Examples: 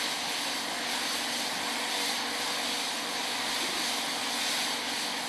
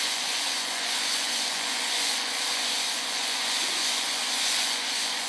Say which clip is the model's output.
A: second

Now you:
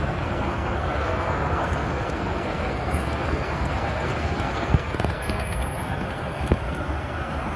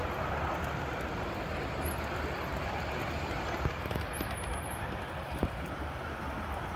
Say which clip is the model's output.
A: first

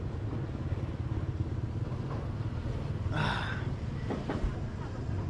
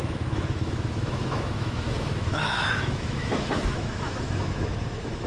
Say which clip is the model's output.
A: second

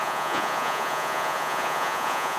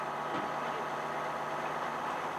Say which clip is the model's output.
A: first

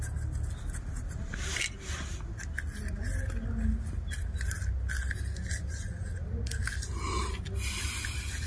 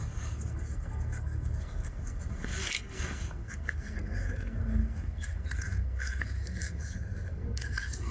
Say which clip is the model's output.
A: second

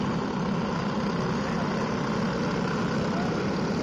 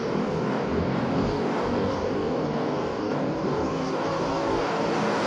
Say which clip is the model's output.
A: second